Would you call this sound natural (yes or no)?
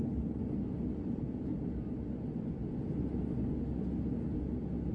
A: yes